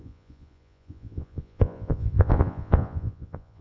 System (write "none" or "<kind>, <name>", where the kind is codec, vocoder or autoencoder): vocoder, Vocos